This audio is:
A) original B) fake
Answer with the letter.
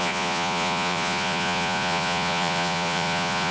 B